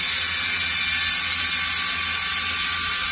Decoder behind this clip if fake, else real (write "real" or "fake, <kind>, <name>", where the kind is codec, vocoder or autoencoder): real